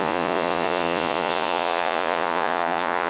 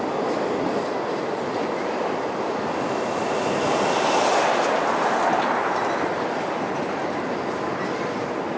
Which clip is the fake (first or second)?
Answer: first